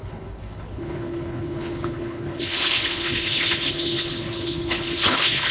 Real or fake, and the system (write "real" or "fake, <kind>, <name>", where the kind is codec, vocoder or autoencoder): fake, codec, HILCodec